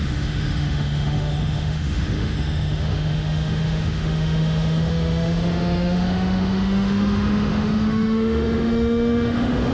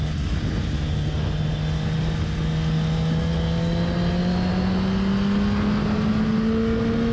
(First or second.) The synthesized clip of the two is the first